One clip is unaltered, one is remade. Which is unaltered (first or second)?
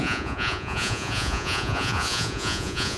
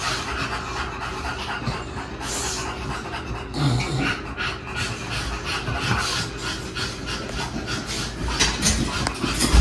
second